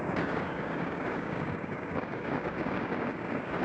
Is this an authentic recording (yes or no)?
no